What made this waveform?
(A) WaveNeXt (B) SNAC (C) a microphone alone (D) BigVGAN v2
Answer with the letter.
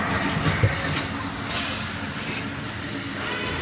C